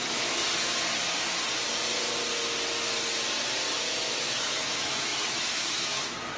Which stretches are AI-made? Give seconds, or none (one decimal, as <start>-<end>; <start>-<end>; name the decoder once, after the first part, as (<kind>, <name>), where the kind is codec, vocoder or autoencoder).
0.0-0.4 (autoencoder, DAC-VAE); 3.8-6.4